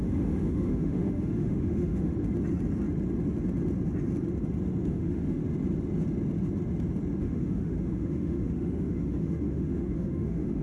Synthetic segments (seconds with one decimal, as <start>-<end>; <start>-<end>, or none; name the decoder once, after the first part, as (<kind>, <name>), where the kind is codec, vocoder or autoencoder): 0.0-2.1 (autoencoder, DAC-VAE); 4.9-5.4; 7.2-10.6